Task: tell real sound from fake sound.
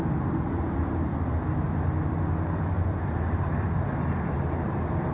real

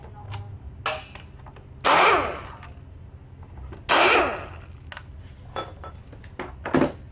real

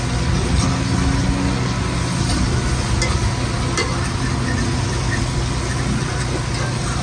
real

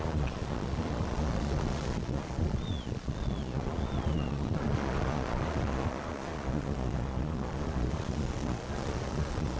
fake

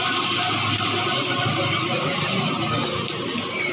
real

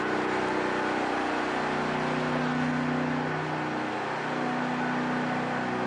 real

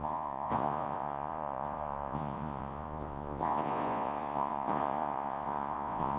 fake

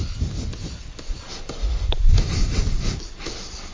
real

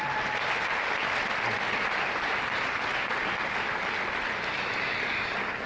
real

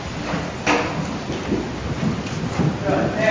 real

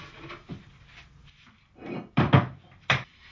real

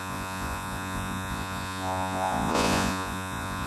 fake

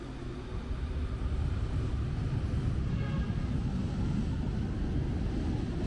real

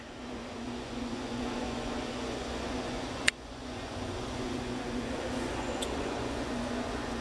fake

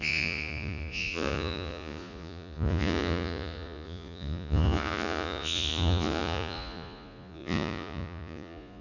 fake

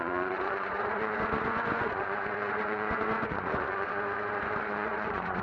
fake